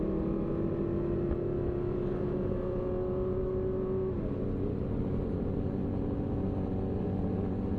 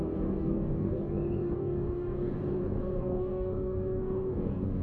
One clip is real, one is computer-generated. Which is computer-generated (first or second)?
second